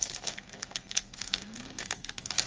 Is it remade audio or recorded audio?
remade